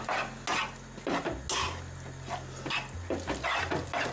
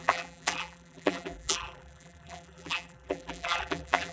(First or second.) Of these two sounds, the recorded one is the first